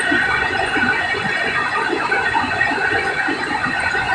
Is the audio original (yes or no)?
no